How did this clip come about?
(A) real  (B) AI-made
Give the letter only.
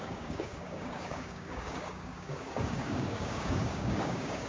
B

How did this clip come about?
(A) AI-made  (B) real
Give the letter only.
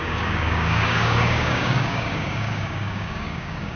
A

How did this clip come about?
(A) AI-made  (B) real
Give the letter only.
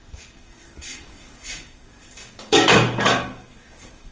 A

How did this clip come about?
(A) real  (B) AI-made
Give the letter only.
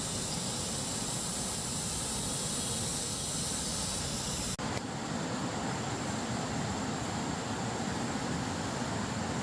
A